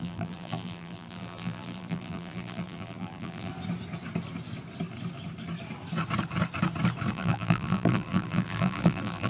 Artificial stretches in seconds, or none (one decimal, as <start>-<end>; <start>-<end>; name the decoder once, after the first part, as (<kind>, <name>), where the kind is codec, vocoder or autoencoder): 0.0-3.5 (vocoder, BigVGAN v2); 7.1-9.3